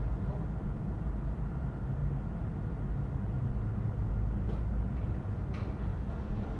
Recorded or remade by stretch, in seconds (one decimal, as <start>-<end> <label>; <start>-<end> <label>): 0.0-5.9 recorded; 5.9-6.6 remade